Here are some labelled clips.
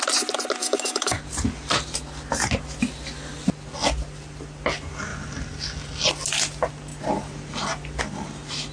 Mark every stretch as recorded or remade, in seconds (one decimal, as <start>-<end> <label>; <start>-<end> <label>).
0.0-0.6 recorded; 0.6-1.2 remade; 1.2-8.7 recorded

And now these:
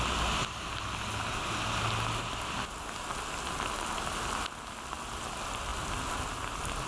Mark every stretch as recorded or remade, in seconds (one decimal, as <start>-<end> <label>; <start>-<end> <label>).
0.0-6.9 recorded

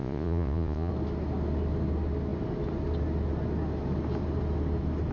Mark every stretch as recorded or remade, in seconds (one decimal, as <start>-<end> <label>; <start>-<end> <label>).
0.0-0.9 remade; 0.9-5.1 recorded